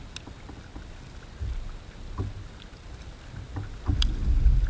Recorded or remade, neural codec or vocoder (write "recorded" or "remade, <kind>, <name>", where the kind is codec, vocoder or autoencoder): recorded